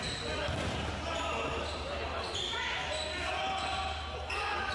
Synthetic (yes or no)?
no